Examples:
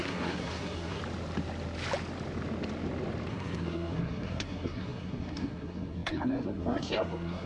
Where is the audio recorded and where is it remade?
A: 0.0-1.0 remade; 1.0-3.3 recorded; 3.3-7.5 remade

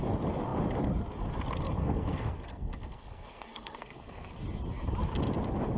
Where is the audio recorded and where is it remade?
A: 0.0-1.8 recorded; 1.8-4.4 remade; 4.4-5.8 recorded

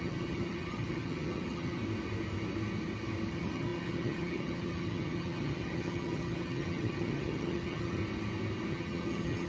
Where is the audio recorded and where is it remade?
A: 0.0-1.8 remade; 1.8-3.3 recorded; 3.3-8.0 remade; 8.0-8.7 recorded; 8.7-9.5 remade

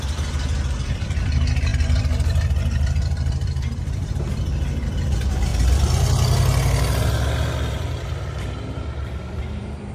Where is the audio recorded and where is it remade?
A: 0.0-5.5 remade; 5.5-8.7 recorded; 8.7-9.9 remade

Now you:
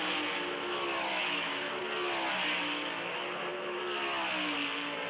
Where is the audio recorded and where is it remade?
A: 0.0-1.1 recorded; 1.1-1.8 remade; 1.8-5.1 recorded

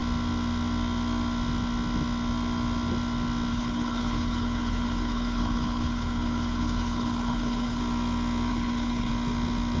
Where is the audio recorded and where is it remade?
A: 0.0-3.5 recorded; 3.5-7.8 remade; 7.8-8.5 recorded; 8.5-9.1 remade; 9.1-9.8 recorded

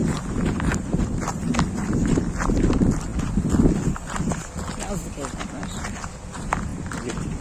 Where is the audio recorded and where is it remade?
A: 0.0-3.1 remade; 3.1-3.9 recorded; 3.9-7.4 remade